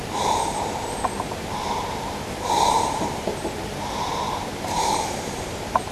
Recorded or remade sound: remade